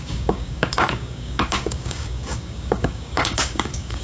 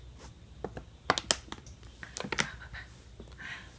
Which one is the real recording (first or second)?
second